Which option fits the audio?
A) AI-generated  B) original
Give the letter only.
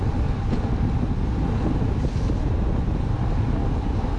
B